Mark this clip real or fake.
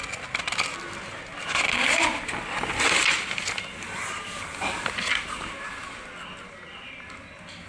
real